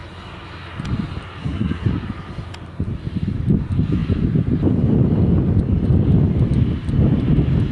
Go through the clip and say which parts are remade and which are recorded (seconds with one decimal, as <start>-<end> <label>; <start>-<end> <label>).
0.0-1.4 recorded; 1.4-1.9 remade; 1.9-7.7 recorded